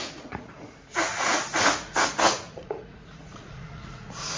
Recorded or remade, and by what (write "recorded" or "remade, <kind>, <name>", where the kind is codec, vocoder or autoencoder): remade, vocoder, Vocos